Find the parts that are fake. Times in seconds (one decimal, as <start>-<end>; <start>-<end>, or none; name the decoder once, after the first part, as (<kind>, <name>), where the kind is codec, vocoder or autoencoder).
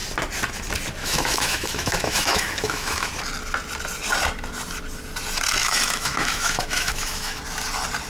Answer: 1.0-3.1 (autoencoder, DAC-VAE); 5.6-7.4